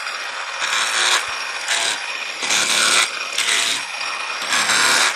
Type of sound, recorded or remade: recorded